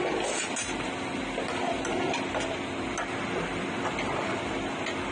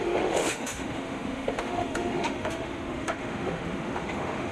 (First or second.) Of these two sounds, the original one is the first